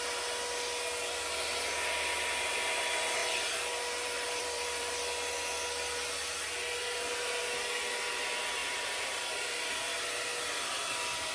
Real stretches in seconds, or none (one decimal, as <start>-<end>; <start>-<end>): 0.0-3.2; 4.9-8.6; 9.7-11.3